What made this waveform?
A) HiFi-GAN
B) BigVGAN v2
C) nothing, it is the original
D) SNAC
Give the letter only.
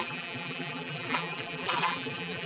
B